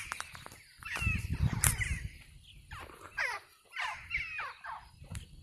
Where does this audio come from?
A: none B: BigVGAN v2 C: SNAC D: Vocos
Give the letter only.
A